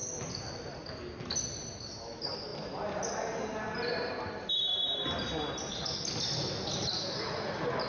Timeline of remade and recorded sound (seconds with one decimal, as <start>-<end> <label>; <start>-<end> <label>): 0.0-7.9 recorded